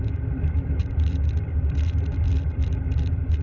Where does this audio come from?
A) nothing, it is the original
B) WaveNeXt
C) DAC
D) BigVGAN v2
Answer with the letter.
D